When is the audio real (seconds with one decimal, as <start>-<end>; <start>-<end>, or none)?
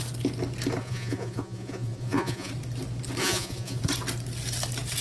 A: 0.0-0.8; 2.5-3.2; 3.8-5.0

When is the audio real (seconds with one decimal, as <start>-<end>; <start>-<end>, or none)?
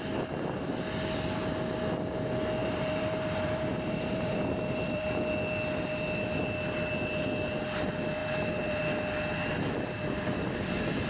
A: 0.0-2.6; 5.0-8.2; 8.8-11.1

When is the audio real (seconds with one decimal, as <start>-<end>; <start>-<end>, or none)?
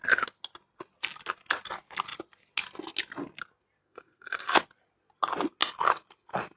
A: 0.0-3.8; 4.6-6.6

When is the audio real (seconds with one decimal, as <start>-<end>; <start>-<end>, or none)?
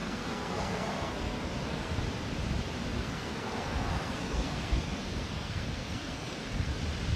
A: 2.0-2.9; 6.8-7.2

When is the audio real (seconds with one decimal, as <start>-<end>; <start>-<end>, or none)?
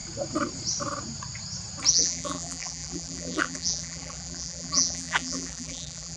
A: 0.0-1.9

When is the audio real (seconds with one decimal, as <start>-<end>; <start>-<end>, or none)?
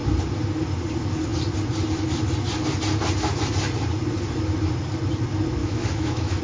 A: 0.0-5.6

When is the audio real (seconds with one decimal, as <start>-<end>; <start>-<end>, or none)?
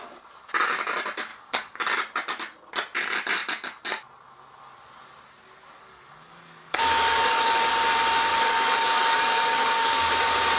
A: 0.0-1.3; 1.8-5.9; 7.7-8.3; 10.1-10.6